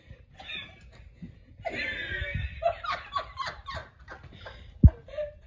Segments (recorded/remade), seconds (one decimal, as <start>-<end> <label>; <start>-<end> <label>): 0.0-5.5 recorded